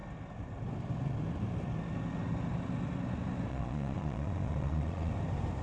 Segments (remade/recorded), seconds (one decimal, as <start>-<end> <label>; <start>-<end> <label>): 0.0-3.5 recorded; 3.5-5.1 remade; 5.1-5.6 recorded